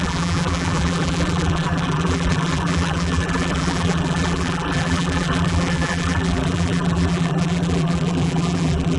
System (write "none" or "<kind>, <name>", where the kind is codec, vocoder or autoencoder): vocoder, BigVGAN v2